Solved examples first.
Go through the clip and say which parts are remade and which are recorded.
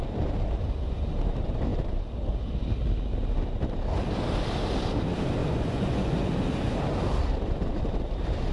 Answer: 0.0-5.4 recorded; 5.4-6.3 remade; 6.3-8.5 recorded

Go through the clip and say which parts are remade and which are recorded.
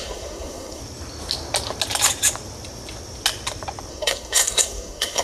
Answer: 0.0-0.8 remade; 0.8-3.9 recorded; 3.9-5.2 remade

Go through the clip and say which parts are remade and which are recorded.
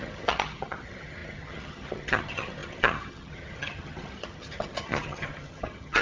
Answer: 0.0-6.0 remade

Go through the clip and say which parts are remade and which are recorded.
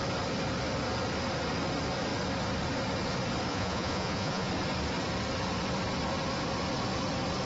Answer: 0.0-3.5 recorded; 3.5-4.5 remade; 4.5-7.4 recorded